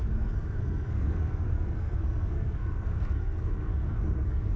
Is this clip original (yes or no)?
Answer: no